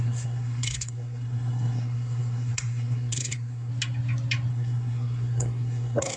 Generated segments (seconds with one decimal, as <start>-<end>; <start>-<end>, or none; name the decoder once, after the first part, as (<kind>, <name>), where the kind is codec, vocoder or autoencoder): 0.0-3.7 (codec, SNAC); 4.5-6.2